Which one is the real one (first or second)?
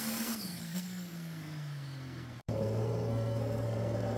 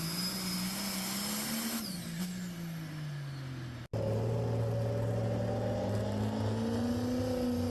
second